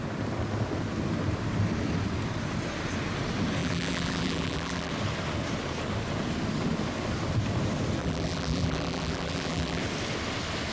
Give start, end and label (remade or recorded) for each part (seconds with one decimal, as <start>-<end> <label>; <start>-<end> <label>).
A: 0.0-3.6 recorded; 3.6-4.9 remade; 4.9-8.0 recorded; 8.0-9.8 remade; 9.8-10.7 recorded